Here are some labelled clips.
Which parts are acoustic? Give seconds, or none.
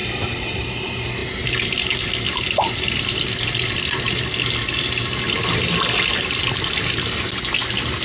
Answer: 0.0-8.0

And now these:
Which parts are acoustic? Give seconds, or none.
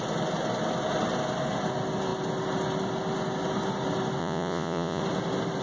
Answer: 0.0-4.2; 5.0-5.6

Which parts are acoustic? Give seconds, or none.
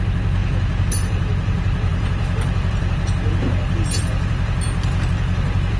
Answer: 0.0-5.8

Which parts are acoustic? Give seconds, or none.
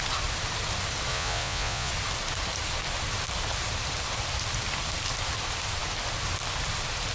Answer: 0.0-1.1; 1.9-7.1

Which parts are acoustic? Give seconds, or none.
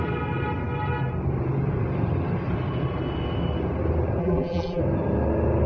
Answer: 0.0-4.2; 4.8-5.7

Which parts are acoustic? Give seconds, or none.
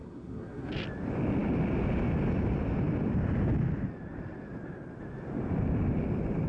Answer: 0.7-6.5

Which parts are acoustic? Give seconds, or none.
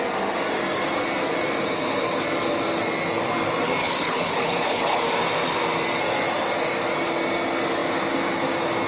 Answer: 0.0-3.8; 5.0-8.9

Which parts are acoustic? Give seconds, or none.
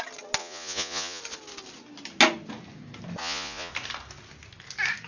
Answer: 0.0-0.4; 1.2-3.2; 3.7-5.1